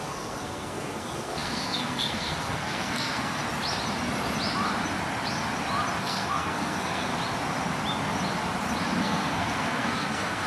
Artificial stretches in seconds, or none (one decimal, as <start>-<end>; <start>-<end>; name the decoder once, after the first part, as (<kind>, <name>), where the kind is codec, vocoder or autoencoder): 0.0-3.4 (codec, SNAC); 6.0-7.1; 9.0-10.5